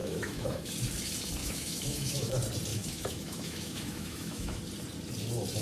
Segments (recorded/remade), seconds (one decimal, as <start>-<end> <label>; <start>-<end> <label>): 0.0-0.7 remade; 0.7-1.4 recorded; 1.4-2.3 remade; 2.3-2.7 recorded; 2.7-4.6 remade; 4.6-5.6 recorded